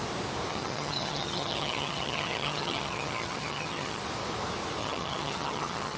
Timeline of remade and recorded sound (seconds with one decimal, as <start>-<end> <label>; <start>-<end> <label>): 0.0-0.5 recorded; 0.5-4.0 remade; 4.0-4.8 recorded; 4.8-6.0 remade

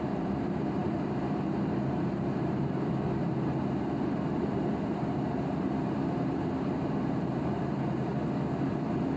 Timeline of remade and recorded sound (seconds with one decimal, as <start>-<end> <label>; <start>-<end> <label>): 0.0-8.1 remade; 8.1-9.2 recorded

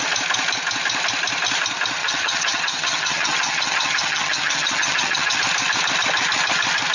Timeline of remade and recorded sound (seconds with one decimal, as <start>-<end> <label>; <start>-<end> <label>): 0.0-2.0 recorded; 2.0-5.4 remade; 5.4-6.9 recorded

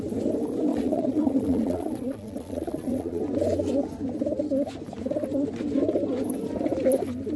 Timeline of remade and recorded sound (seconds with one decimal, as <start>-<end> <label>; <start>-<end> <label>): 0.0-0.7 recorded; 0.7-3.2 remade; 3.2-7.4 recorded

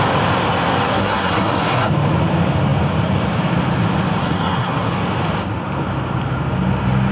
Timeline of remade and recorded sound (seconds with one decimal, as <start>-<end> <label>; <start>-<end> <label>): 0.0-1.0 recorded; 1.0-1.9 remade; 1.9-4.2 recorded; 4.2-4.9 remade; 4.9-7.1 recorded

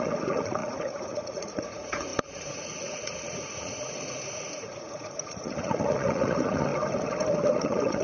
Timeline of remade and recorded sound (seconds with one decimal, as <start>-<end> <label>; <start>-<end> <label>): 0.0-6.7 remade; 6.7-7.6 recorded; 7.6-8.0 remade

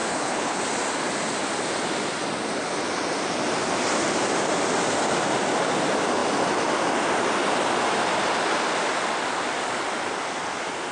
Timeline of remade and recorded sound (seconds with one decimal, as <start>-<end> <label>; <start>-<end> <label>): 0.0-0.6 remade; 0.6-10.9 recorded

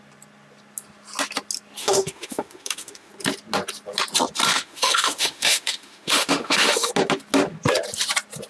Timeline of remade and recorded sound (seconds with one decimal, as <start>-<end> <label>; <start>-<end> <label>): 0.0-1.8 recorded; 1.8-3.1 remade; 3.1-4.5 recorded; 4.5-6.9 remade; 6.9-8.5 recorded